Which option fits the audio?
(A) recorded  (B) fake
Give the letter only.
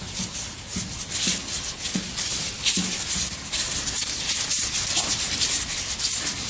A